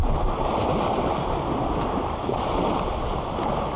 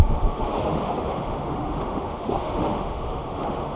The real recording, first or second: first